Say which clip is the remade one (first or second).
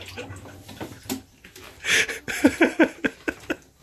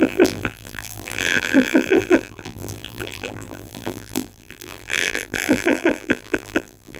second